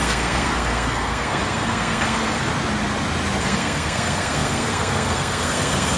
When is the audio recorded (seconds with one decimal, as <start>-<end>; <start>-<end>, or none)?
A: 2.5-3.4